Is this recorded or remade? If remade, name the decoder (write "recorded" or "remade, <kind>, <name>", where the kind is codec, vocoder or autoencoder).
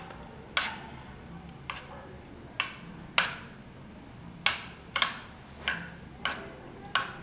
recorded